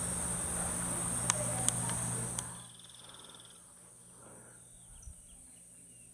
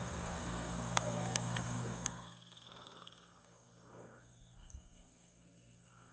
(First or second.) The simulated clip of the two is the second